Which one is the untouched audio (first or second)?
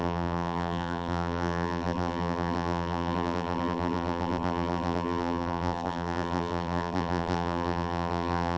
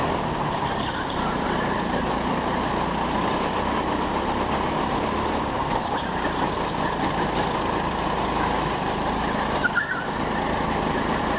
second